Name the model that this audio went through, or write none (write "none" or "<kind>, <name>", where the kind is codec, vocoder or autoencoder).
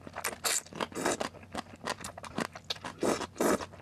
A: none